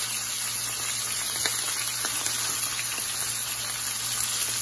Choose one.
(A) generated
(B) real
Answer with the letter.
B